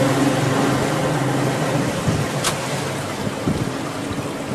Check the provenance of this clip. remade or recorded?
recorded